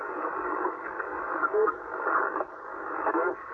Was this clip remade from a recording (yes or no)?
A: yes